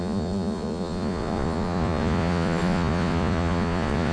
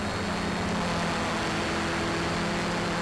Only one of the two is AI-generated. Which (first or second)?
first